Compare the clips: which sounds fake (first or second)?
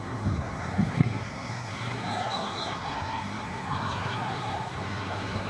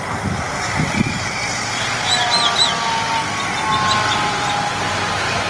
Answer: first